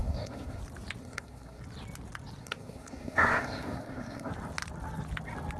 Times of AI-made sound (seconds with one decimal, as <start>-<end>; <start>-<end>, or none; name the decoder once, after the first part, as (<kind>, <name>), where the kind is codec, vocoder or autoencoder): 0.0-0.6 (codec, SNAC); 1.0-1.6; 2.4-4.3